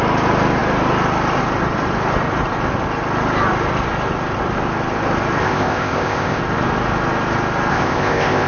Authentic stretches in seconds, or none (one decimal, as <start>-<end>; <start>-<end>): 0.0-5.4; 6.4-7.7